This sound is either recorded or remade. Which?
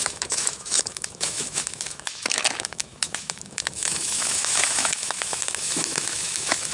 remade